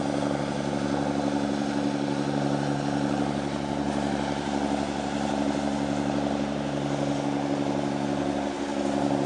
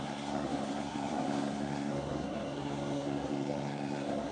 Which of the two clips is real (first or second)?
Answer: first